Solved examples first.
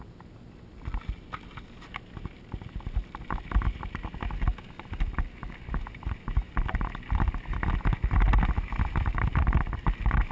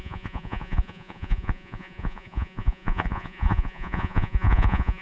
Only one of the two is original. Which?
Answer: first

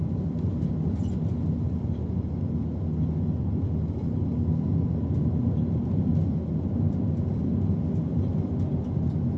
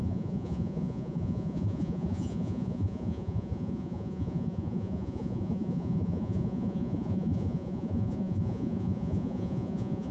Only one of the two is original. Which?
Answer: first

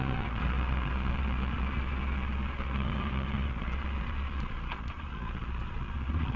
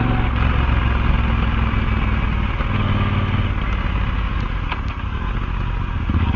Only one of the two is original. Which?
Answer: second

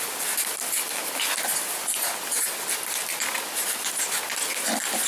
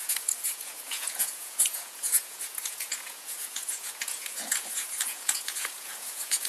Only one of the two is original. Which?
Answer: first